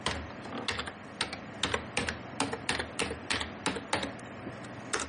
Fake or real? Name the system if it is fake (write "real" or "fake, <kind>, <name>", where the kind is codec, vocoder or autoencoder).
real